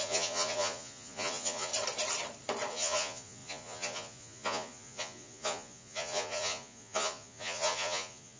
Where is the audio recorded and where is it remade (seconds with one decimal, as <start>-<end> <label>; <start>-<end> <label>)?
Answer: 0.0-1.7 remade; 1.7-2.7 recorded; 2.7-8.4 remade